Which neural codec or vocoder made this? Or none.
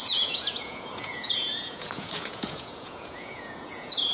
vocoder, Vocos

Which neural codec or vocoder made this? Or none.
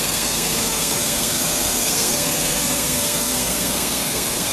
codec, SNAC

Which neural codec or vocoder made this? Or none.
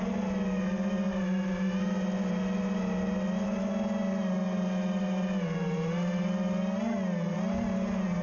none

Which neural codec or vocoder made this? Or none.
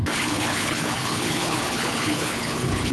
codec, HILCodec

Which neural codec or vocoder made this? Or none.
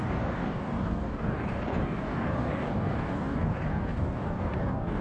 codec, DAC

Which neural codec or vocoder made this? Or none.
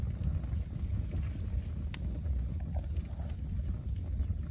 none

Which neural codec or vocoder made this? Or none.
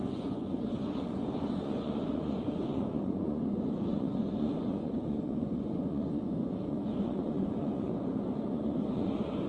vocoder, Vocos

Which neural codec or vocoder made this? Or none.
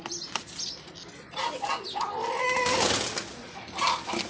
none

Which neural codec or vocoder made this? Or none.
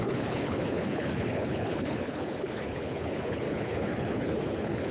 codec, HILCodec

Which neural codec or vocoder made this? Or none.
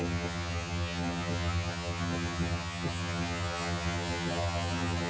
vocoder, HiFi-GAN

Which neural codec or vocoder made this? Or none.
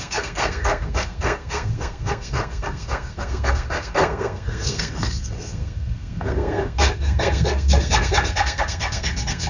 codec, SNAC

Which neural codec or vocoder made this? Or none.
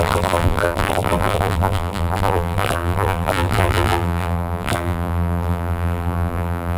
vocoder, BigVGAN v2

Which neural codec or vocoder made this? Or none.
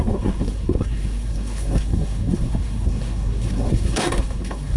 codec, SNAC